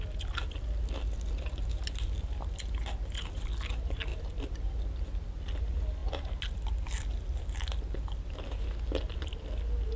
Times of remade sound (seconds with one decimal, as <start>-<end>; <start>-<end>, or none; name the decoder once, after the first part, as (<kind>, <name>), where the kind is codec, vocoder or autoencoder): none